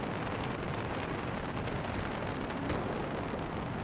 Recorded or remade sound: recorded